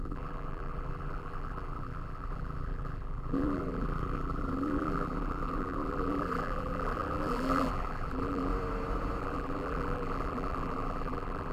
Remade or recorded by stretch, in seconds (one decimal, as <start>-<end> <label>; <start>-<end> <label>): 0.0-8.5 remade; 8.5-9.2 recorded; 9.2-11.5 remade